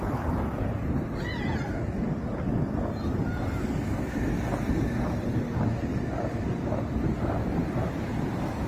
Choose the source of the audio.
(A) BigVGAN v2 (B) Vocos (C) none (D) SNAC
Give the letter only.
C